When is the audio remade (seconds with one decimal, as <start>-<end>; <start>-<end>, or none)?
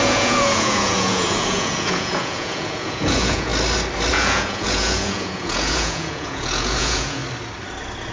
0.0-3.5; 4.1-7.2